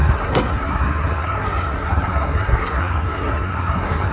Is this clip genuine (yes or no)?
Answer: no